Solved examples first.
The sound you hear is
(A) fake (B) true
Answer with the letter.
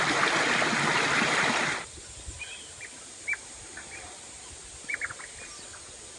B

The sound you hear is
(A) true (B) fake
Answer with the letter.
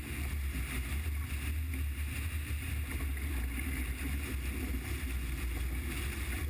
A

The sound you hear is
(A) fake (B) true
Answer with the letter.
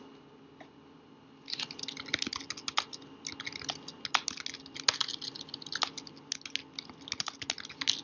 B